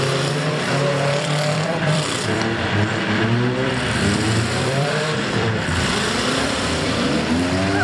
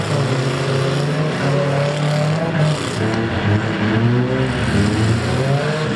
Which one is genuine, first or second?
second